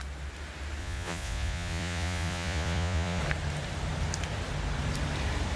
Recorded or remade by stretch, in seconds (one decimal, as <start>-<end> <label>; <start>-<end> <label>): 0.0-0.8 recorded; 0.8-3.2 remade; 3.2-5.6 recorded